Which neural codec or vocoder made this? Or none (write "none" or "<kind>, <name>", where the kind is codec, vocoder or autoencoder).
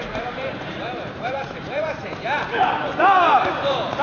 vocoder, BigVGAN v2